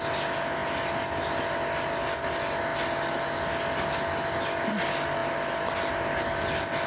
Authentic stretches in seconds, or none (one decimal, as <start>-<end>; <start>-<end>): 0.0-6.9